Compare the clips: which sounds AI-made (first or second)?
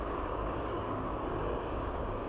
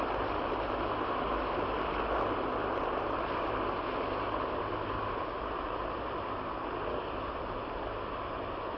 first